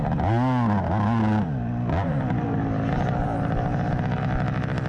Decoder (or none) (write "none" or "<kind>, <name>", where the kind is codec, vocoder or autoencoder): none